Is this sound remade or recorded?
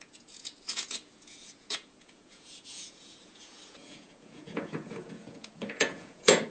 remade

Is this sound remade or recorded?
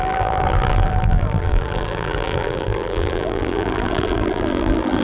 remade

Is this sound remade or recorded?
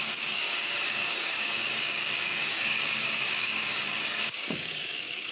remade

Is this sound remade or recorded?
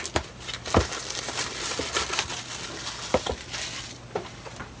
recorded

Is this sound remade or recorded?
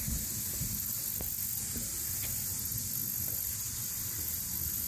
recorded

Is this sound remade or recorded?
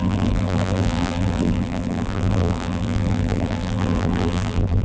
remade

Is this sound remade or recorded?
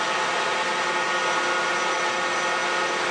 recorded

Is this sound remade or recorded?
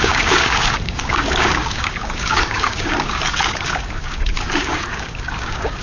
remade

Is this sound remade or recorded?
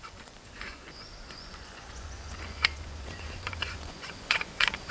remade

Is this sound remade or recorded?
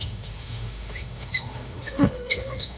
remade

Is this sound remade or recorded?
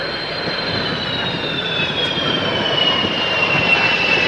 remade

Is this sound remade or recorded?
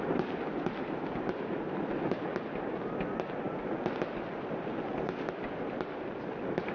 recorded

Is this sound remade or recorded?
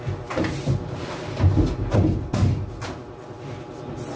recorded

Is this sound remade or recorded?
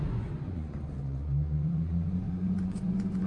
remade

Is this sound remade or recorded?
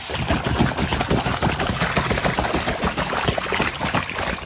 recorded